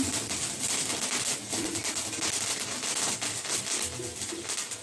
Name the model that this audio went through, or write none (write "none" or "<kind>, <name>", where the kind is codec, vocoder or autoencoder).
none